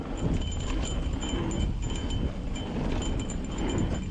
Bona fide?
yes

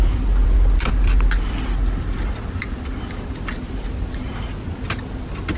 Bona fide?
yes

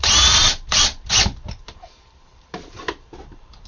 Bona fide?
no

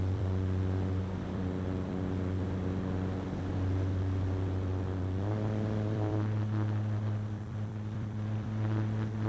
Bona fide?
no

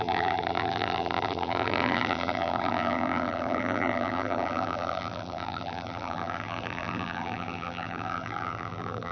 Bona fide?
no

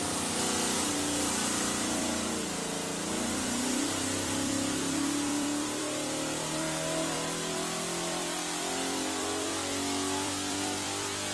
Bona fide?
no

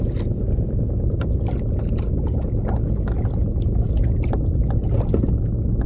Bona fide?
yes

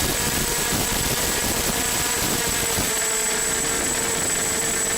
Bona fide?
yes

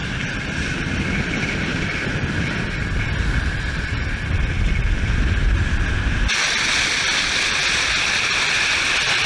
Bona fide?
yes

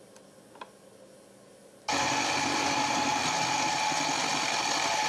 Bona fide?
yes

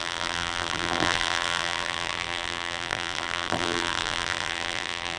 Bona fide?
no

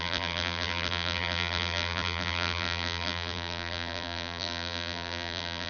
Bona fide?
no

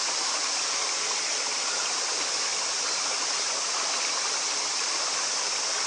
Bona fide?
yes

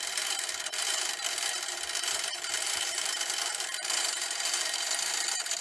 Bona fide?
no